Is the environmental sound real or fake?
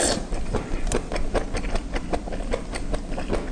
real